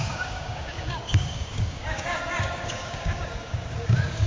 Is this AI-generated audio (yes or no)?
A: yes